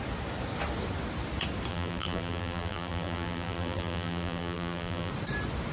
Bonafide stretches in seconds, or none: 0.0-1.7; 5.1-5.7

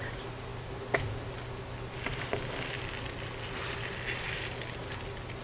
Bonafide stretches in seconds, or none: 0.0-5.4

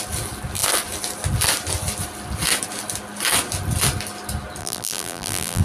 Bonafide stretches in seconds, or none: 0.0-4.6

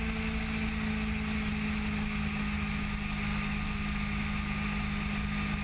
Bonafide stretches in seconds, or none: 0.0-5.6

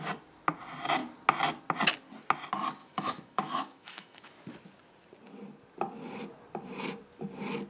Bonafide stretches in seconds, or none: 0.0-2.8; 4.3-7.7